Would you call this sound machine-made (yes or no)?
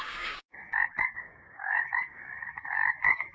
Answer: yes